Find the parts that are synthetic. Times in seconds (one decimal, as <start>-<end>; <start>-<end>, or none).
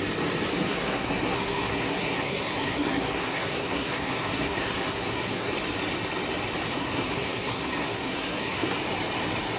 0.5-5.5; 6.8-8.8